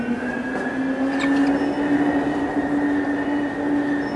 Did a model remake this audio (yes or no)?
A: no